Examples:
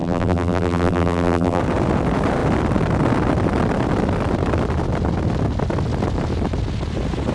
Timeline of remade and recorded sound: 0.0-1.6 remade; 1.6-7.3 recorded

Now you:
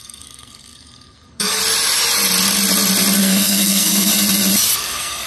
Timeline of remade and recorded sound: 0.0-1.6 remade; 1.6-3.2 recorded; 3.2-4.1 remade; 4.1-4.8 recorded; 4.8-5.3 remade

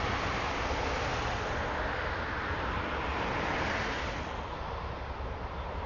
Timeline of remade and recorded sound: 0.0-5.9 recorded

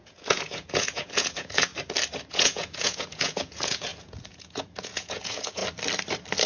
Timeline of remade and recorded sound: 0.0-1.7 remade; 1.7-2.3 recorded; 2.3-5.6 remade; 5.6-6.5 recorded

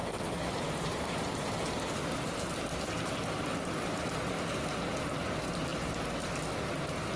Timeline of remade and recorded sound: 0.0-1.7 remade; 1.7-7.2 recorded